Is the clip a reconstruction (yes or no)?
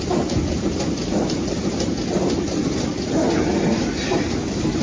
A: no